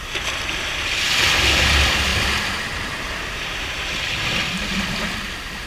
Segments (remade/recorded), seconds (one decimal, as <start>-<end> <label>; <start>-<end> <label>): 0.0-5.7 recorded